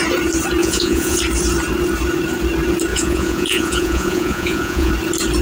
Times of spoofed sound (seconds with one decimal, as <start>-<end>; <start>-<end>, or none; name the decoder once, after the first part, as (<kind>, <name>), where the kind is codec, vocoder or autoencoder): 0.6-1.2 (vocoder, Vocos); 2.9-4.9